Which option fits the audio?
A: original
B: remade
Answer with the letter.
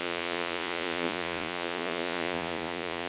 B